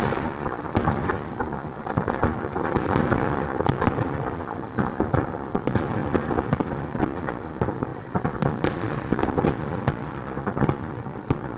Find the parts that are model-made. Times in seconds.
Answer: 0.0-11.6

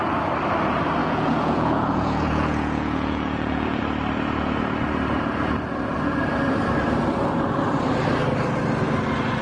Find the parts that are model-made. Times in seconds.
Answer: 1.0-3.8